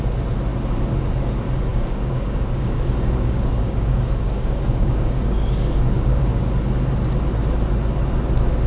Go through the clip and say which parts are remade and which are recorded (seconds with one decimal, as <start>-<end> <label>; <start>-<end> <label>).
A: 0.0-1.7 recorded; 1.7-6.2 remade; 6.2-8.7 recorded